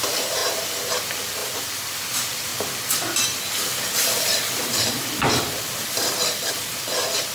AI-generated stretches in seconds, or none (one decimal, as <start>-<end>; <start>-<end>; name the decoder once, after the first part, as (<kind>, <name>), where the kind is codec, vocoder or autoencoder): 0.0-0.4 (vocoder, BigVGAN v2); 1.0-2.5; 3.8-5.8; 6.7-7.3